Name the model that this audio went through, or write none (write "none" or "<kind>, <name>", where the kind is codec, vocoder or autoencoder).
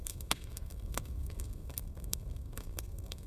codec, SNAC